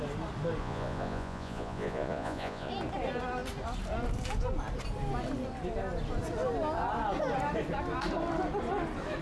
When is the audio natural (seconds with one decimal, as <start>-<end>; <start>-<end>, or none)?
0.0-0.6; 2.7-9.2